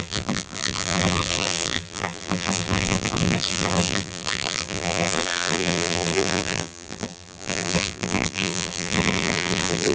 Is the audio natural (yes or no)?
no